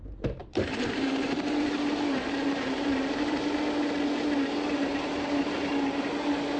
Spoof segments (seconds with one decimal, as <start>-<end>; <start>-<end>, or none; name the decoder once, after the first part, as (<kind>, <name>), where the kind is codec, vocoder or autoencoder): 0.4-3.6 (vocoder, BigVGAN v2); 4.8-5.5